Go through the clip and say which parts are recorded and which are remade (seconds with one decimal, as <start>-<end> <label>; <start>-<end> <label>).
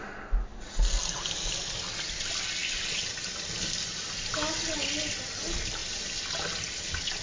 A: 0.0-7.2 recorded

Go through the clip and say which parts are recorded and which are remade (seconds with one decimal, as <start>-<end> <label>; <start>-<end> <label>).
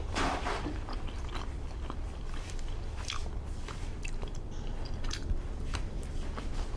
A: 0.0-6.8 remade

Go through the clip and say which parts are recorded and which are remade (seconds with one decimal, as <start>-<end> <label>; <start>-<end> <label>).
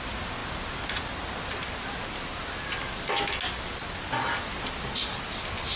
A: 0.0-5.8 recorded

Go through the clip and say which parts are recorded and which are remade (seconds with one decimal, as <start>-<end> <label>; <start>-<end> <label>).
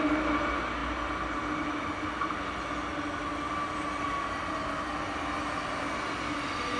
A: 0.0-6.8 recorded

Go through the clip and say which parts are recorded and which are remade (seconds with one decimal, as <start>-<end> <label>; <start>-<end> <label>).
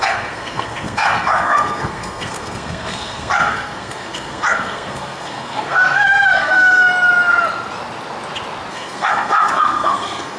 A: 0.0-6.9 remade; 6.9-8.7 recorded; 8.7-10.4 remade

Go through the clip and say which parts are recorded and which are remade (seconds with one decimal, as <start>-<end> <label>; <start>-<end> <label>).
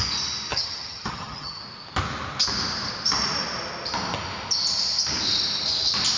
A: 0.0-0.5 recorded; 0.5-1.6 remade; 1.6-6.2 recorded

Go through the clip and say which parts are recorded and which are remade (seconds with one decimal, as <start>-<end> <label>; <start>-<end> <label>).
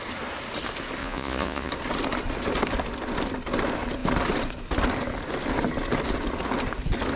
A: 0.0-1.0 recorded; 1.0-1.7 remade; 1.7-7.2 recorded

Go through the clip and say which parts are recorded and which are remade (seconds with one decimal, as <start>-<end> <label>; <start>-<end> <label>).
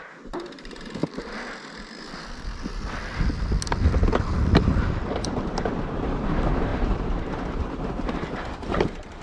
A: 0.0-1.0 remade; 1.0-5.8 recorded; 5.8-9.2 remade